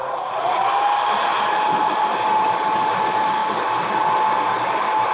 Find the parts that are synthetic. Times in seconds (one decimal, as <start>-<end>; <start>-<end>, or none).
0.0-0.6